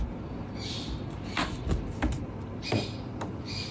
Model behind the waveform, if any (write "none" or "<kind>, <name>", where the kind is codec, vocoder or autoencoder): none